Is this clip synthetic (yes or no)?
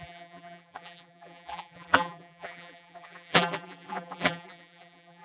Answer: yes